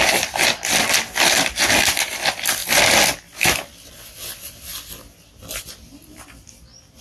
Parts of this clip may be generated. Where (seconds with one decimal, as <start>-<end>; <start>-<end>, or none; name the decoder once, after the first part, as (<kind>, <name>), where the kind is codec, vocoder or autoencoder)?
none

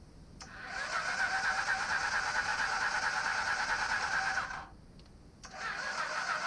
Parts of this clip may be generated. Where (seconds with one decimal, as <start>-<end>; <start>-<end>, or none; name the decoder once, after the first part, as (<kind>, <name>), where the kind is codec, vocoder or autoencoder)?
none

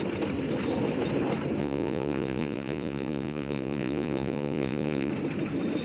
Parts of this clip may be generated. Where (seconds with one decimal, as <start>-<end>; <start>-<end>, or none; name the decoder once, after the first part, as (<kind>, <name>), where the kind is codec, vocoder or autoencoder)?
1.6-5.1 (vocoder, Vocos)